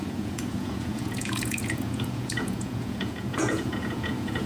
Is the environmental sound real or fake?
fake